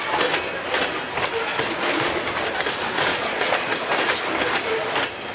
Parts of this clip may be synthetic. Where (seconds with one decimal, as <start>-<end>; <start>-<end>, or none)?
1.5-2.2; 3.1-3.9